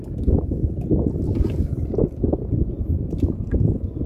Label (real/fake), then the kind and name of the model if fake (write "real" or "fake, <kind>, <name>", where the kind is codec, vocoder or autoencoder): real